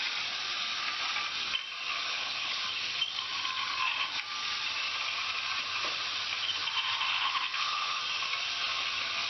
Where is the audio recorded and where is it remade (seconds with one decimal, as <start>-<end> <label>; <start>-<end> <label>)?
0.0-2.1 recorded; 2.1-2.6 remade; 2.6-7.1 recorded; 7.1-8.0 remade; 8.0-9.3 recorded